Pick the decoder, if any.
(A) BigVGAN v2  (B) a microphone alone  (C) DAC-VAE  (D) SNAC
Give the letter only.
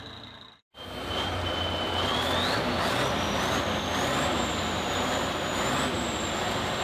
B